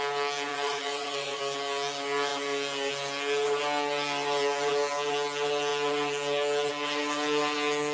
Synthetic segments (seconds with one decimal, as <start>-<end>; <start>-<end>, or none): 0.5-1.4

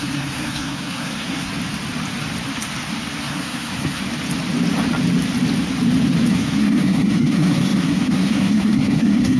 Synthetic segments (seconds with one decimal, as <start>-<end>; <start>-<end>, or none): 0.0-1.5; 3.2-4.0; 6.3-9.4

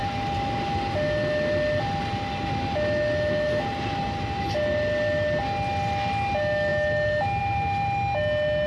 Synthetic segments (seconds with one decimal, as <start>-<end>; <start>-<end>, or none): none

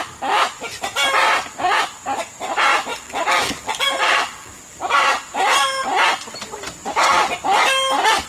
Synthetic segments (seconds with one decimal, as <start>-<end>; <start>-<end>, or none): 2.9-4.6